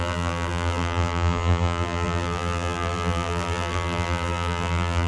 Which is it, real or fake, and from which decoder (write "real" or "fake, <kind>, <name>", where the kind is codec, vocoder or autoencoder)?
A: fake, vocoder, BigVGAN v2